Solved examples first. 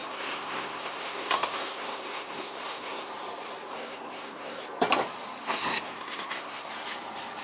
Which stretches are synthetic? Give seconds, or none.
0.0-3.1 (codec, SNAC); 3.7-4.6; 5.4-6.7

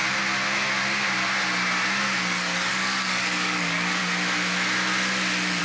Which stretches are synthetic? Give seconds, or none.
2.2-4.0 (codec, DAC)

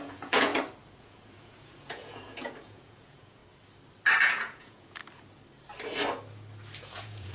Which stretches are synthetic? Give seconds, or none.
0.0-0.5 (vocoder, Vocos); 1.0-3.4; 4.2-5.0; 6.8-7.3

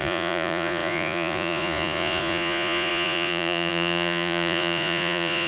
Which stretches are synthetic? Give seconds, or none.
0.0-5.5 (vocoder, Vocos)